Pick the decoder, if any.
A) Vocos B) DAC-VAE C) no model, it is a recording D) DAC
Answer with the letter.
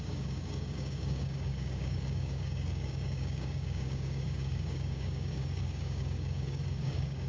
D